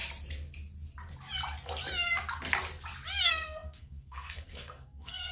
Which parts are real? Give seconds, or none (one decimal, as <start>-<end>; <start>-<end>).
0.0-3.2